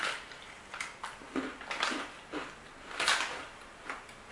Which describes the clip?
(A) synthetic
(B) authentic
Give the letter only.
B